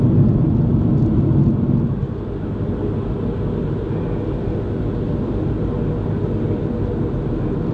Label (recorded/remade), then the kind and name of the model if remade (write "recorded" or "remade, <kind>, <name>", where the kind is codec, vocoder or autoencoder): recorded